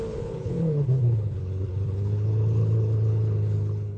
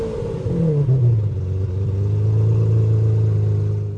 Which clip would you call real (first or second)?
second